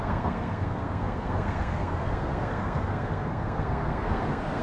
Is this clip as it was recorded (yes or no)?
no